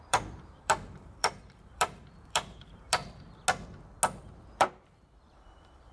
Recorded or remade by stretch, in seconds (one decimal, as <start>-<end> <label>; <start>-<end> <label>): 0.0-3.0 remade; 3.0-4.3 recorded; 4.3-5.9 remade